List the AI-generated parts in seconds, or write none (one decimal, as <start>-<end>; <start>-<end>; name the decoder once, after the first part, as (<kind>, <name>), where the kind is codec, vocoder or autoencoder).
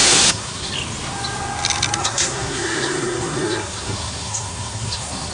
0.0-0.7 (codec, SNAC); 2.0-5.3